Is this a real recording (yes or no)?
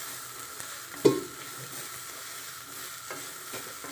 yes